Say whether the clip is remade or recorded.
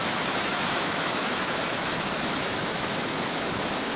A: remade